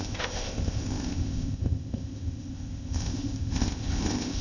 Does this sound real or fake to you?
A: fake